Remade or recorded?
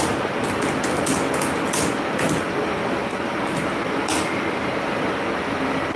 recorded